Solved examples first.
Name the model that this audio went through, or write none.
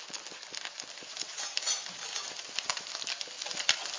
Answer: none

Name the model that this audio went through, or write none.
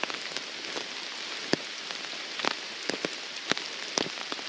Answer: none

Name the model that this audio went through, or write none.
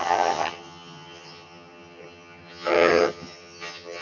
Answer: vocoder, HiFi-GAN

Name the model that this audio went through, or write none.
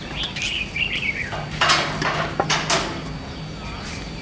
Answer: none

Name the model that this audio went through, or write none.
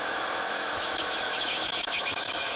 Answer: autoencoder, DAC-VAE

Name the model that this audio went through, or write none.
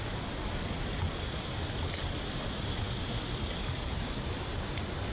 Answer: none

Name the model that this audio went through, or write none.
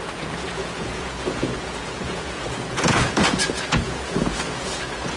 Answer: vocoder, Vocos